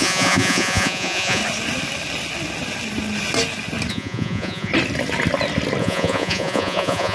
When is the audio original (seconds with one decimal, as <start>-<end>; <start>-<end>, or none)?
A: 1.4-3.9; 4.7-5.8